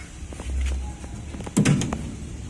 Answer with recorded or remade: recorded